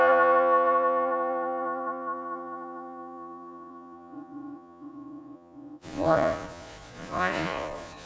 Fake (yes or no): yes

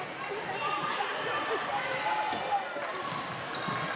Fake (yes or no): no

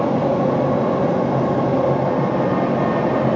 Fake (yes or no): no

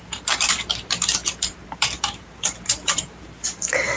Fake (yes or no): yes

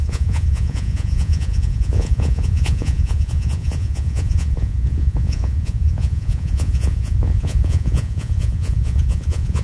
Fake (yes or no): yes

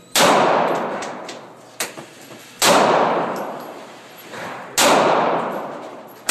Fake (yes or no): no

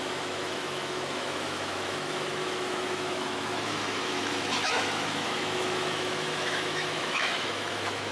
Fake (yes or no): yes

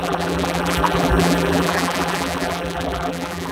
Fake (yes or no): yes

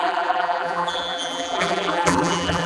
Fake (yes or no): yes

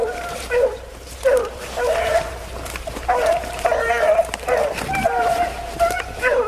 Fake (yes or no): yes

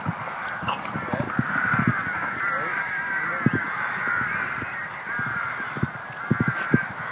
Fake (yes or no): no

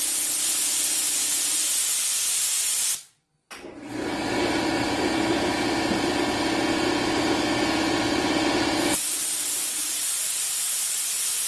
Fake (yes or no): no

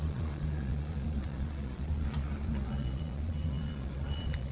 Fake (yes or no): yes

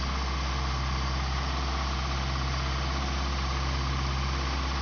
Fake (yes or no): no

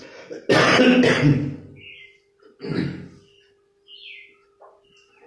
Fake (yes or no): no